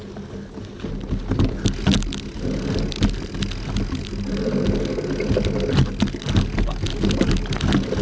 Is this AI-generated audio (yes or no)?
no